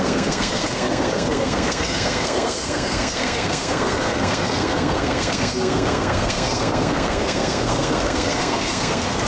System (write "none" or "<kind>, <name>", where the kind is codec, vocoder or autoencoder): codec, SNAC